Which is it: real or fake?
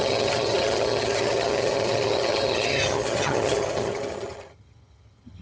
fake